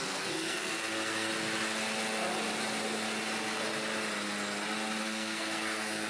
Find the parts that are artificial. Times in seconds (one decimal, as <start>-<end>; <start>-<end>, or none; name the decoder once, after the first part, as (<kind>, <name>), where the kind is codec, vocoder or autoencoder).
0.0-1.3 (codec, SNAC); 5.0-6.1

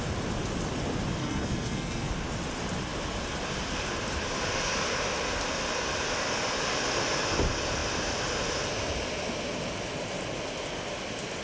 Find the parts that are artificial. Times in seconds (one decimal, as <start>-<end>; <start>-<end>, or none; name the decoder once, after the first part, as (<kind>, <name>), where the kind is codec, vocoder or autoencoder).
1.2-2.1 (codec, SNAC)

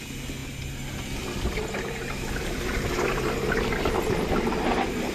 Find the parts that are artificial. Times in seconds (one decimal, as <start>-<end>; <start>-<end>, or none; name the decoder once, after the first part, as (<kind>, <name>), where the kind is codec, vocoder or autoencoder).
none

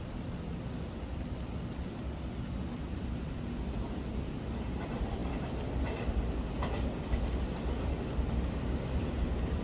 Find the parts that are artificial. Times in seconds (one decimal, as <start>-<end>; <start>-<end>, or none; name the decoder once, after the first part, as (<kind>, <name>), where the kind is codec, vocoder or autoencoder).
none

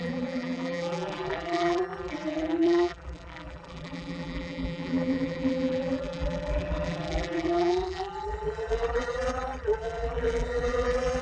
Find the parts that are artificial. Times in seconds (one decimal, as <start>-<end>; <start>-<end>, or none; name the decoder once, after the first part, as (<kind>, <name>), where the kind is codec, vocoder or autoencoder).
0.0-11.2 (vocoder, BigVGAN v2)